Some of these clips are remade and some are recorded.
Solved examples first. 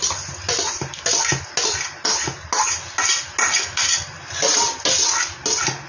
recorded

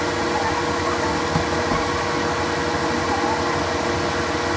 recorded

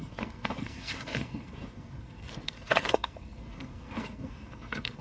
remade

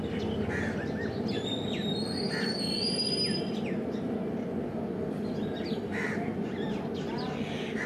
recorded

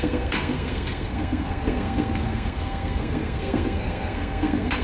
remade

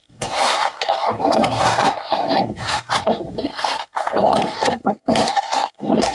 remade